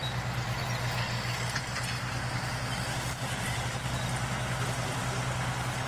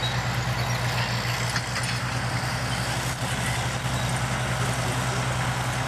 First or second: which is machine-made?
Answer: first